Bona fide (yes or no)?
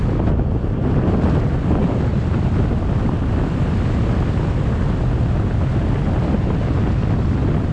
yes